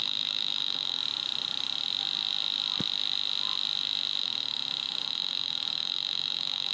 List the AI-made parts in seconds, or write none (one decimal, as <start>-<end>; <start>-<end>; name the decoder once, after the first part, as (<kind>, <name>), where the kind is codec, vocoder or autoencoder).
0.0-1.0 (autoencoder, DAC-VAE); 4.2-6.7